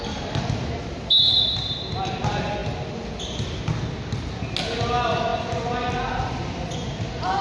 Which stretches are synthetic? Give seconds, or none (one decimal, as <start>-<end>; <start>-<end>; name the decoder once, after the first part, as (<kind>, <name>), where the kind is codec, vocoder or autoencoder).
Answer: none